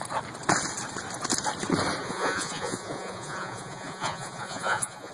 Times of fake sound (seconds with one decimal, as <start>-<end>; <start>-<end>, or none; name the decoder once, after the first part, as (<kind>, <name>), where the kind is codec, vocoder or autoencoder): 2.0-5.1 (vocoder, Vocos)